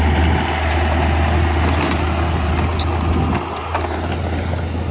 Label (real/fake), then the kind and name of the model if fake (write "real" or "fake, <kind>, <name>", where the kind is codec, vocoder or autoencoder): real